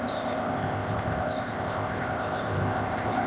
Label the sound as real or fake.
fake